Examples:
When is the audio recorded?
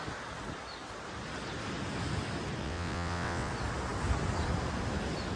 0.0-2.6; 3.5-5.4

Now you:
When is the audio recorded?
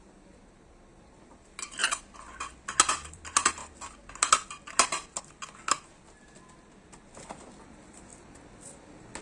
0.0-9.2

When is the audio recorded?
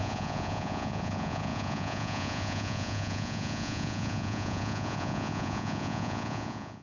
none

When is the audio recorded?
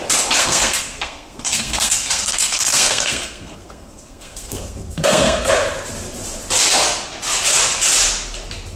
0.0-0.4; 5.5-8.8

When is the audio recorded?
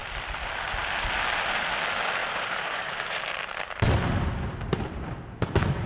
0.0-2.2; 3.2-5.9